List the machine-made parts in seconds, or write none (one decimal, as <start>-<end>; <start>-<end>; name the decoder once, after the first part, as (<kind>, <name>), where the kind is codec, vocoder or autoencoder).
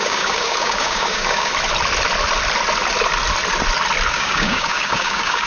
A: 0.0-1.5 (codec, DAC); 4.1-5.5